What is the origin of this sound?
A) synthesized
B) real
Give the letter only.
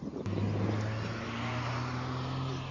B